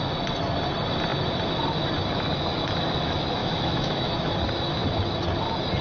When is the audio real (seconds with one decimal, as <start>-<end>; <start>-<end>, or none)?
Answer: 0.0-3.4; 4.3-5.8